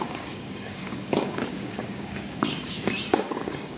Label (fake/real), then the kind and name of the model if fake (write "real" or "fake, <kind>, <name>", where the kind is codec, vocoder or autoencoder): fake, codec, DAC